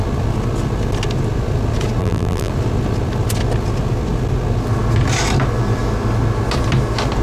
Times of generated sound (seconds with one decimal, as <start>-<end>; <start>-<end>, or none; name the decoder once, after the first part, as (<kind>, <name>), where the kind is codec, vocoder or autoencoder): 2.0-2.5 (vocoder, BigVGAN v2)